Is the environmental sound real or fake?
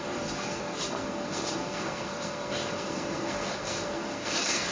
fake